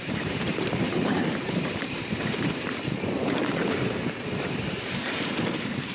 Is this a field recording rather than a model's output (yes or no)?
no